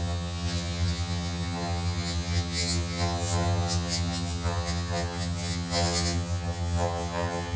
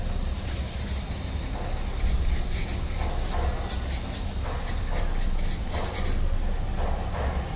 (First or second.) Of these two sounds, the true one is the second